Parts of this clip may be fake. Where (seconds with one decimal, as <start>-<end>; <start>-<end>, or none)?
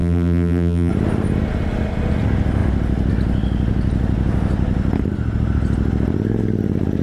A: 0.0-0.9